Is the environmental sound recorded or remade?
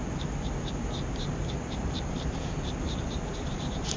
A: remade